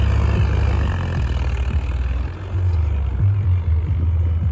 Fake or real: real